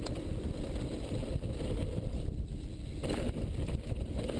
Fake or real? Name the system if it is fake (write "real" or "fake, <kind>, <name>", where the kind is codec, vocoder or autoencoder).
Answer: real